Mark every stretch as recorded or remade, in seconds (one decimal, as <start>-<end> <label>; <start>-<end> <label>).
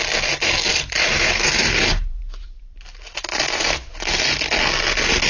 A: 0.0-0.7 recorded; 0.7-3.9 remade; 3.9-5.3 recorded